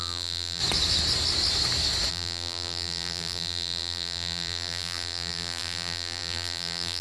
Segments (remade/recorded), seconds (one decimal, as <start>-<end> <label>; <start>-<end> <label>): 0.0-0.6 remade; 0.6-2.1 recorded; 2.1-7.0 remade